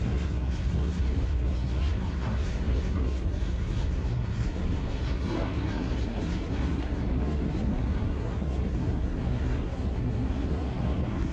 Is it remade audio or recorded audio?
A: remade